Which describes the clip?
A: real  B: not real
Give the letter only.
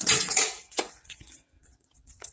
B